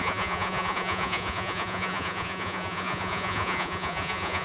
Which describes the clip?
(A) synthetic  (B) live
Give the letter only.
A